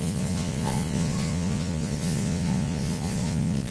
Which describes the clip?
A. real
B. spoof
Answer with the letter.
B